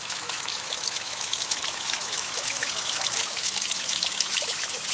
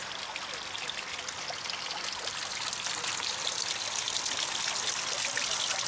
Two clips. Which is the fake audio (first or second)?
first